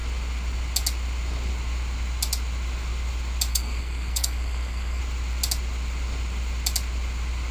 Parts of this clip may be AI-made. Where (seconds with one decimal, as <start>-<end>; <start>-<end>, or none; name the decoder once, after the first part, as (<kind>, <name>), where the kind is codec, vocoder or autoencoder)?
3.5-5.0 (codec, SNAC)